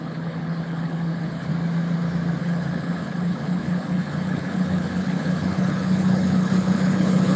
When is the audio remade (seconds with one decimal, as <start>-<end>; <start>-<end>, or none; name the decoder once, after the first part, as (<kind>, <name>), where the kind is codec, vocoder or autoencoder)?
0.0-1.5 (codec, HILCodec); 2.4-7.4